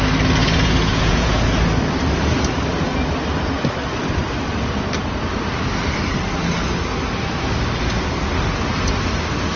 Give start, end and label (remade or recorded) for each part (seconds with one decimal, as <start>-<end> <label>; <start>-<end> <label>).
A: 0.0-0.4 recorded; 0.4-1.5 remade; 1.5-9.6 recorded